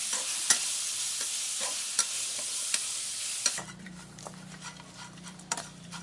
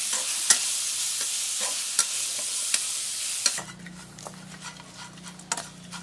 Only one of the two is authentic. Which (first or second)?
second